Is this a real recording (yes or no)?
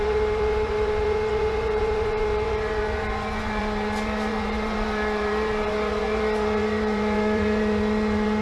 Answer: no